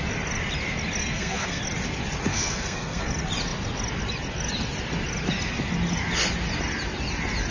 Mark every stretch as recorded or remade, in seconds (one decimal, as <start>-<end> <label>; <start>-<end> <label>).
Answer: 0.0-1.0 recorded; 1.0-1.6 remade; 1.6-2.3 recorded; 2.3-3.0 remade; 3.0-7.5 recorded